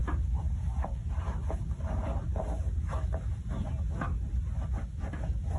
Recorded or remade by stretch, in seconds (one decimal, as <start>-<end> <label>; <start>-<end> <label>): 0.0-5.6 recorded